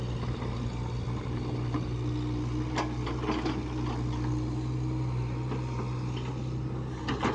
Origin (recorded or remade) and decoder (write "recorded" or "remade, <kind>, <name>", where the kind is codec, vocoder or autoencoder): recorded